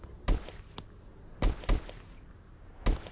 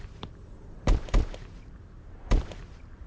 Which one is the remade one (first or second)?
second